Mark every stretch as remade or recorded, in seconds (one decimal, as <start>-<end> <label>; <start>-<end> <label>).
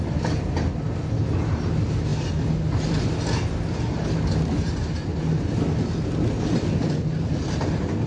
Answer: 0.0-8.1 recorded